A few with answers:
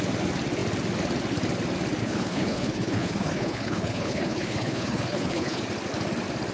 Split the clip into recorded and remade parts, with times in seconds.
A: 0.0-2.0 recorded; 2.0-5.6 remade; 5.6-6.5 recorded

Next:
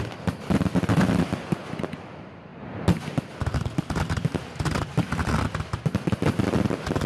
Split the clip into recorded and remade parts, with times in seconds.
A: 0.0-7.1 recorded